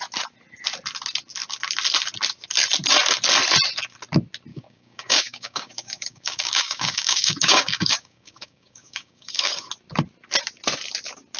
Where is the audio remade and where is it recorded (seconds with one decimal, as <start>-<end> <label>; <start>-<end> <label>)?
0.0-4.5 recorded; 4.5-9.7 remade; 9.7-11.4 recorded